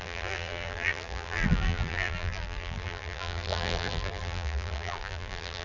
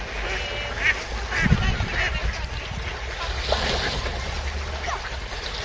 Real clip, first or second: second